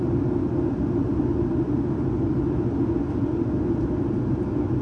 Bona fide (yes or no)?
yes